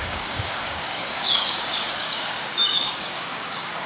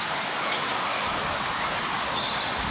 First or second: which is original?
second